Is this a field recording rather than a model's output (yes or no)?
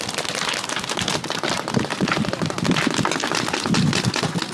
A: yes